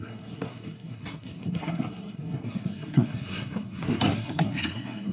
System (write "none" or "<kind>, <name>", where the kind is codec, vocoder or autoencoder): codec, SNAC